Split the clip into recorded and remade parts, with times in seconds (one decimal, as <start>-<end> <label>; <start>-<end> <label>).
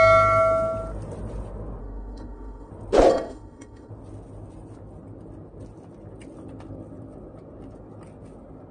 0.0-1.8 recorded; 1.8-2.7 remade; 2.7-3.1 recorded; 3.1-3.9 remade; 3.9-8.7 recorded